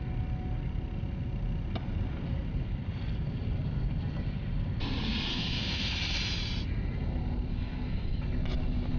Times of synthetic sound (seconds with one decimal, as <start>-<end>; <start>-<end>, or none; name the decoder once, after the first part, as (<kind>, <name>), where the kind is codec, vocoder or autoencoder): 5.3-5.9 (codec, SNAC); 7.5-8.2